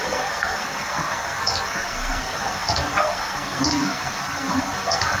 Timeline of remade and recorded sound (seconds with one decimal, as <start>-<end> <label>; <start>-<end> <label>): 0.0-5.2 remade